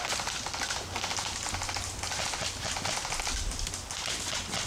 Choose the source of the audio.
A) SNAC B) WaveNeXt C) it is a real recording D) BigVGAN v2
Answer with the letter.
C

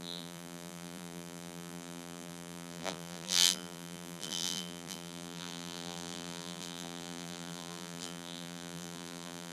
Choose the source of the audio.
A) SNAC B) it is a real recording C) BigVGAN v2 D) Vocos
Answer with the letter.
C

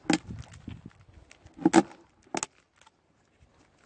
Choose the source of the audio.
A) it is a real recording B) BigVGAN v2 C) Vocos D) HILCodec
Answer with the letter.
A